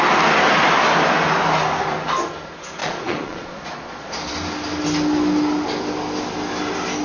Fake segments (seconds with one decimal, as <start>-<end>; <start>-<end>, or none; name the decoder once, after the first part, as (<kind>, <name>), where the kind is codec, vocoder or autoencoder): 2.8-4.2 (vocoder, Vocos)